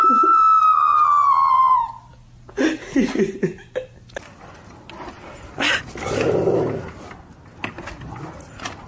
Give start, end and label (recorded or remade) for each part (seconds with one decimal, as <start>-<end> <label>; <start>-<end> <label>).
0.0-8.9 recorded

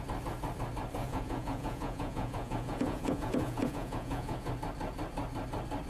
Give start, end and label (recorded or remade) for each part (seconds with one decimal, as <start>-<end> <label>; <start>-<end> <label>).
0.0-1.0 recorded; 1.0-4.5 remade; 4.5-5.9 recorded

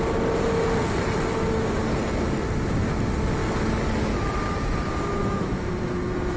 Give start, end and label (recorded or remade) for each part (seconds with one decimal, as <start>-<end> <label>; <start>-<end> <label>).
0.0-5.2 recorded; 5.2-6.0 remade; 6.0-6.4 recorded

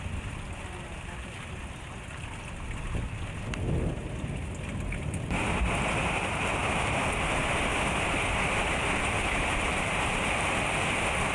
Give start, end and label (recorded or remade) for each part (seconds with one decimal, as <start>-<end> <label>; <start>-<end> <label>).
0.0-11.3 recorded

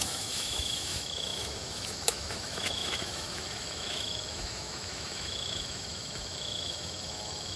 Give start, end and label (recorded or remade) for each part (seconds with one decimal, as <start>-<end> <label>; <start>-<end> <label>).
0.0-7.6 remade

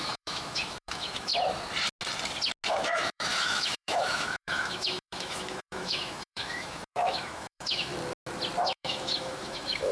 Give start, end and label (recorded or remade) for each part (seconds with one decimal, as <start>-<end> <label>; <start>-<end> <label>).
0.0-1.3 remade; 1.3-2.7 recorded; 2.7-7.9 remade; 7.9-8.6 recorded; 8.6-9.9 remade

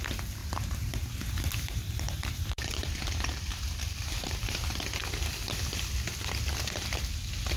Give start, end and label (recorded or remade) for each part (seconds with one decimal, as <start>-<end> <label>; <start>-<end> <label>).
0.0-0.4 recorded; 0.4-5.0 remade; 5.0-7.6 recorded

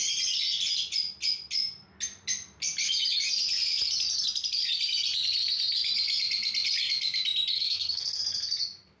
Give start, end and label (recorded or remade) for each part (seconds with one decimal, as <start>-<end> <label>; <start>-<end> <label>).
0.0-7.5 recorded; 7.5-8.2 remade; 8.2-9.0 recorded